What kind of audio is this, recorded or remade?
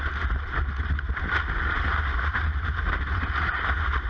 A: recorded